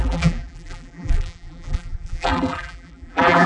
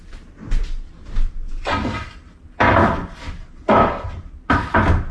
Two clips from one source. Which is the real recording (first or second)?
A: second